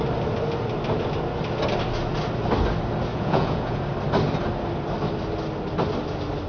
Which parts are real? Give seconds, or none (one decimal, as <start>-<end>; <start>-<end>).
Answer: 0.0-3.1; 3.8-6.5